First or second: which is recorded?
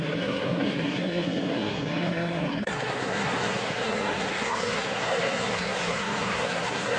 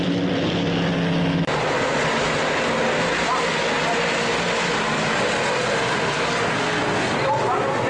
second